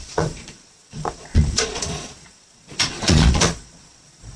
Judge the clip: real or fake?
fake